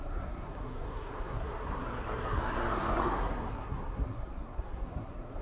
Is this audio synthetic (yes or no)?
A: yes